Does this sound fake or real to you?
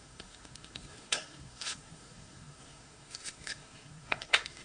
fake